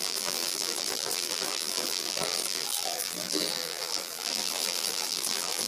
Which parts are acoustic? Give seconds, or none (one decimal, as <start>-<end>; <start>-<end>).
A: none